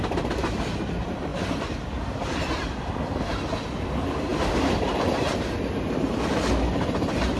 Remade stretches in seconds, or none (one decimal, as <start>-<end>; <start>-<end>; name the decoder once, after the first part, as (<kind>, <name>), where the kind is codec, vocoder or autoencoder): none